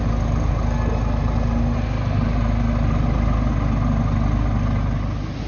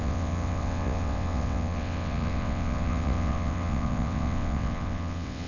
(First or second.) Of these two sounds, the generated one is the second